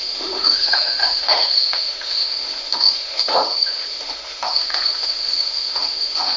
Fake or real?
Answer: fake